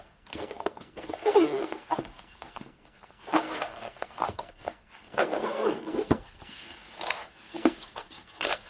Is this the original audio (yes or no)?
no